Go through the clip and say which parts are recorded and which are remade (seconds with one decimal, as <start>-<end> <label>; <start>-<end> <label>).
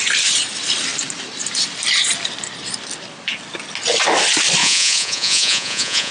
0.0-4.6 recorded; 4.6-6.1 remade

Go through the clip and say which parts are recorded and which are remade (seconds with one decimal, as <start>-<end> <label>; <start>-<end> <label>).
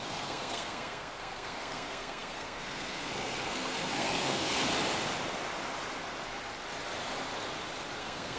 0.0-4.7 remade; 4.7-8.0 recorded; 8.0-8.4 remade